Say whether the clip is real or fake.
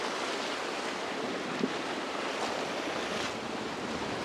real